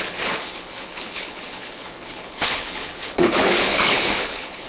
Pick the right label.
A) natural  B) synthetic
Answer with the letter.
B